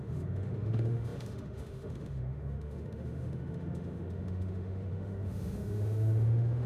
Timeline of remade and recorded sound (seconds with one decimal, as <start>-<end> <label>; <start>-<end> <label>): 0.0-6.7 remade